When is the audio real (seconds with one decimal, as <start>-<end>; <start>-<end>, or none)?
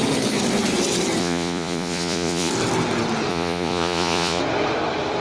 0.0-1.2; 2.5-3.3; 4.4-5.2